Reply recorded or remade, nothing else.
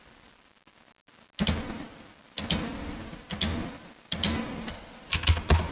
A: recorded